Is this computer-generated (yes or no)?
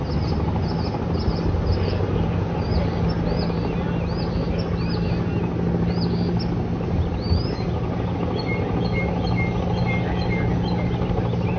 no